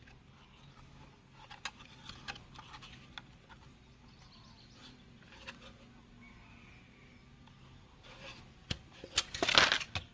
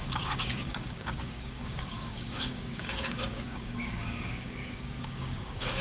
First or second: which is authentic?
first